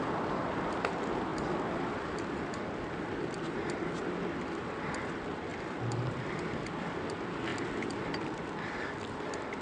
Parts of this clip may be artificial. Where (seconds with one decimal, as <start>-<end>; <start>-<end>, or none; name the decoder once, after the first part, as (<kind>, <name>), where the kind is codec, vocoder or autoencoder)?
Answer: 7.5-9.6 (vocoder, BigVGAN v2)